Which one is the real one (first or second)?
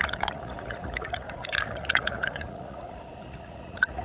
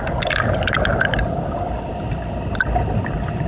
second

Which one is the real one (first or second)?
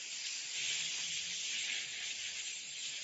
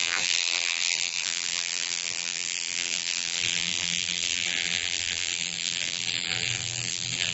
first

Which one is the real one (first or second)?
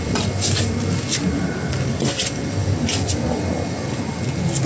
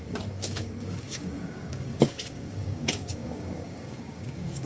first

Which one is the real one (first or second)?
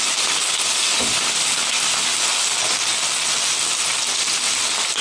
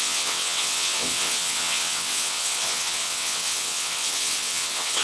first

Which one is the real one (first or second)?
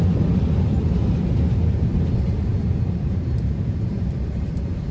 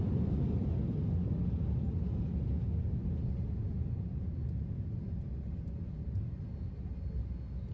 second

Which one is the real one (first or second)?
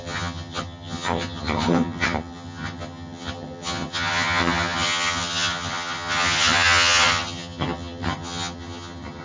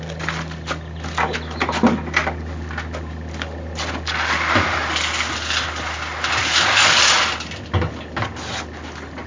second